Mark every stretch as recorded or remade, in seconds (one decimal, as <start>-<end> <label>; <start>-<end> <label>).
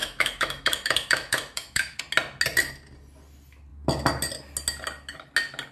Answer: 0.0-2.0 remade; 2.0-5.7 recorded